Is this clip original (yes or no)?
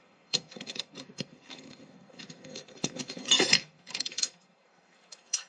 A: no